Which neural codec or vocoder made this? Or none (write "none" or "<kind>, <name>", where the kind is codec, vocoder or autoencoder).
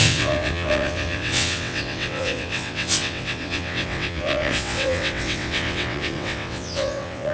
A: vocoder, WaveNeXt